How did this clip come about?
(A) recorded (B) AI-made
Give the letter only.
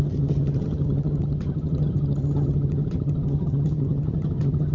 B